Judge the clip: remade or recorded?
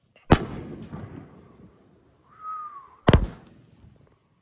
recorded